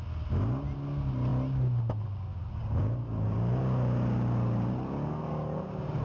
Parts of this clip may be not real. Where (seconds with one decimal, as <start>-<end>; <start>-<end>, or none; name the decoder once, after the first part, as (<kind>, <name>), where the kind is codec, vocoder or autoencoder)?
none